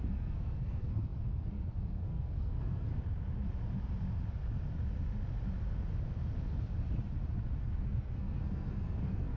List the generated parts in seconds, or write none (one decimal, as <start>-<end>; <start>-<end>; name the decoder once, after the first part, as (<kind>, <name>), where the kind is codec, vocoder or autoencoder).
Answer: 0.0-2.9 (codec, SNAC); 7.6-9.4